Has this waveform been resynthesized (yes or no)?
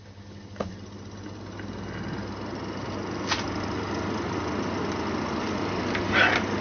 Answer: no